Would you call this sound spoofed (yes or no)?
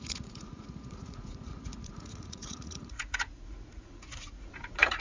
yes